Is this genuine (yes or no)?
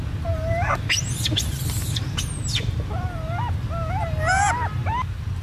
yes